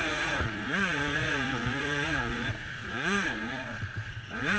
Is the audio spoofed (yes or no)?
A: yes